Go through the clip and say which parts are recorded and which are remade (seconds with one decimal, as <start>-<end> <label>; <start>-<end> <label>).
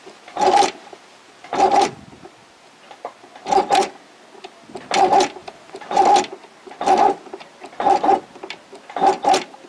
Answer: 0.0-5.4 recorded; 5.4-6.0 remade; 6.0-9.7 recorded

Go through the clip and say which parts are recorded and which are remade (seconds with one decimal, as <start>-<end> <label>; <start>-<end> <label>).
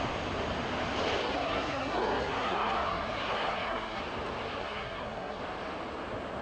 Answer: 0.0-1.2 recorded; 1.2-4.0 remade; 4.0-4.6 recorded; 4.6-5.4 remade; 5.4-6.4 recorded